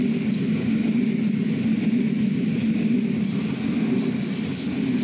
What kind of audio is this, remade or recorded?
recorded